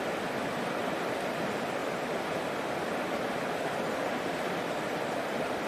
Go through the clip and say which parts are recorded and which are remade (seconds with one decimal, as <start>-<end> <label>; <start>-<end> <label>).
0.0-5.7 recorded